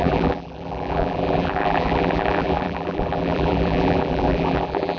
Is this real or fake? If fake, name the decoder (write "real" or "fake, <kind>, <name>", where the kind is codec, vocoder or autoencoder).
fake, vocoder, BigVGAN v2